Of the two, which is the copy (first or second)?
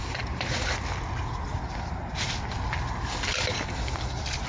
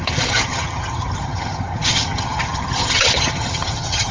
second